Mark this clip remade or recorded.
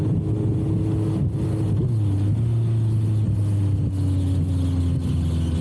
recorded